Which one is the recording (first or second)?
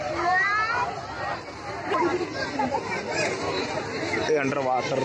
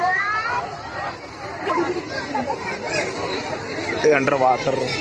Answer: first